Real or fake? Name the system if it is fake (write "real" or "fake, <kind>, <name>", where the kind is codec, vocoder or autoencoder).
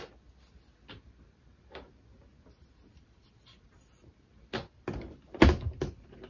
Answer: real